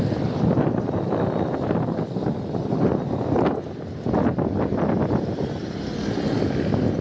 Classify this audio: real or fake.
real